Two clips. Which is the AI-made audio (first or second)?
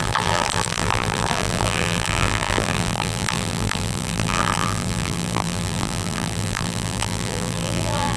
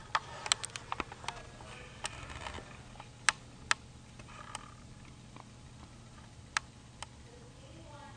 first